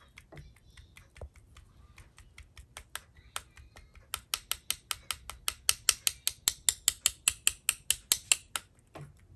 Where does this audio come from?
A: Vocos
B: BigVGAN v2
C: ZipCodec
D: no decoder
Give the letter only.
D